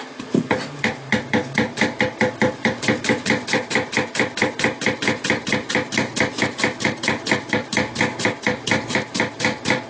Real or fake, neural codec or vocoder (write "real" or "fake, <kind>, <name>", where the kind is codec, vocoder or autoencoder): fake, vocoder, BigVGAN v2